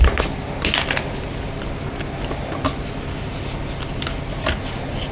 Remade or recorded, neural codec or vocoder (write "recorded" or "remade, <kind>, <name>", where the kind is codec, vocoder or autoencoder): recorded